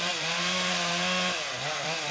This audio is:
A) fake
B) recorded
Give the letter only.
A